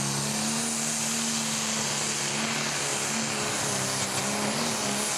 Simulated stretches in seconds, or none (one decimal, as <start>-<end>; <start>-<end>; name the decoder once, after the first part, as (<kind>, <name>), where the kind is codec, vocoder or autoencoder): none